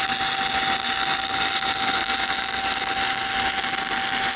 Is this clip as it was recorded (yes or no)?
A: yes